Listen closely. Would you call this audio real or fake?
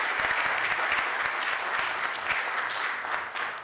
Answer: real